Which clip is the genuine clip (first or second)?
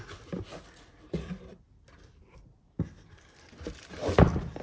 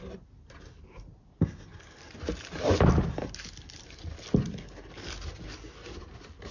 second